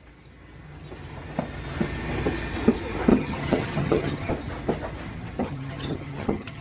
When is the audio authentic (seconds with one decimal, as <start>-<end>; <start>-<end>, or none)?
0.0-3.1; 4.3-5.4